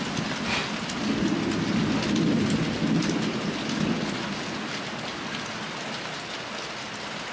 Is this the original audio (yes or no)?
yes